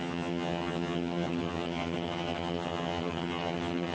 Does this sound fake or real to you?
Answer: fake